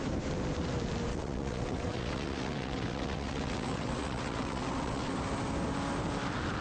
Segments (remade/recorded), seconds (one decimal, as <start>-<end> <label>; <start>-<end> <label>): 0.0-1.1 recorded; 1.1-5.1 remade; 5.1-6.6 recorded